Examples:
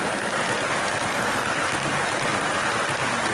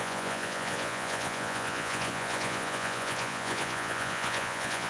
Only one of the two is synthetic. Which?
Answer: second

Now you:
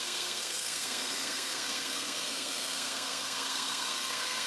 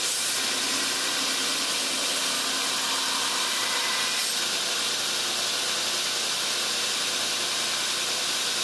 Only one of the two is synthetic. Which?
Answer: first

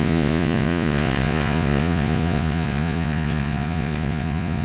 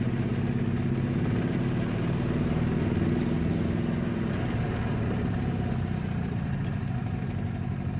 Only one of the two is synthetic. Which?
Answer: first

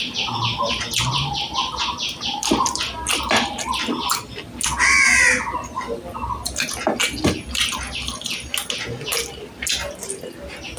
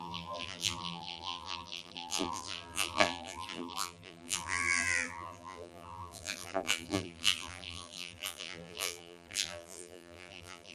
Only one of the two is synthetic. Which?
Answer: second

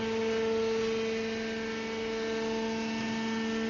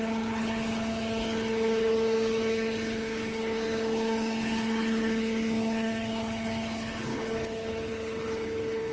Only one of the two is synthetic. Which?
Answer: second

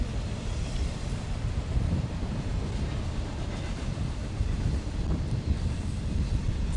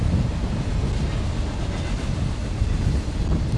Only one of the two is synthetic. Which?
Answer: first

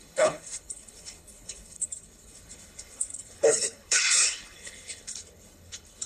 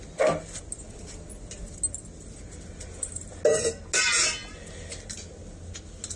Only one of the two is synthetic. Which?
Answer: first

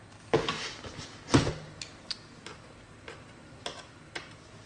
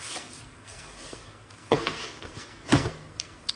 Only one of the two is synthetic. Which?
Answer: second